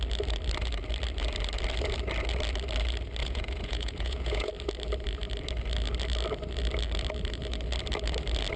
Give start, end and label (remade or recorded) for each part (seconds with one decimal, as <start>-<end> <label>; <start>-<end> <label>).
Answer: 0.0-3.2 recorded; 3.2-4.5 remade; 4.5-8.6 recorded